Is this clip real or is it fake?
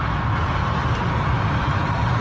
real